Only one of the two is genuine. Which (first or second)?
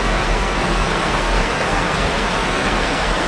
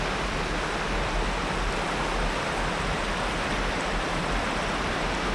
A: second